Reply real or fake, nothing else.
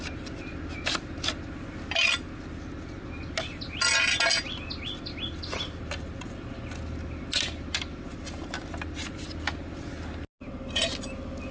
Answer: real